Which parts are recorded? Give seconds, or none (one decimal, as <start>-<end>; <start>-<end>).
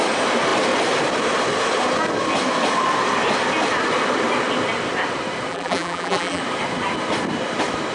0.0-5.5; 6.4-7.9